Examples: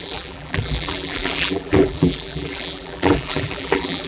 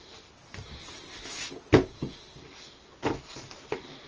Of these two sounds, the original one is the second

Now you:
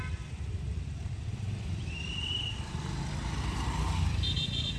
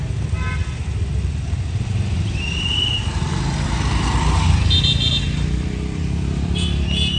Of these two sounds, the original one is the second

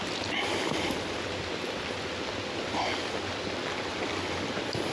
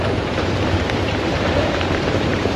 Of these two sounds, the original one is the first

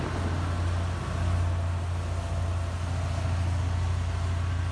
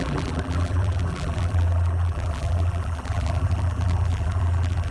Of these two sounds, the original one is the first